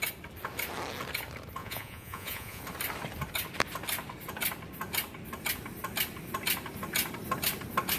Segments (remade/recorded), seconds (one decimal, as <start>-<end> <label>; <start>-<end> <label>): 0.0-1.6 recorded; 1.6-2.6 remade; 2.6-8.0 recorded